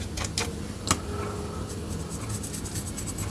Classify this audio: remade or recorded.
recorded